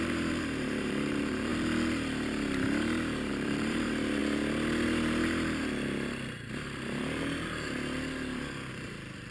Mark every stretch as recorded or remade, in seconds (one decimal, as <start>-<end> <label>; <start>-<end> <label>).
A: 0.0-1.5 remade; 1.5-3.3 recorded; 3.3-4.2 remade; 4.2-8.7 recorded; 8.7-9.3 remade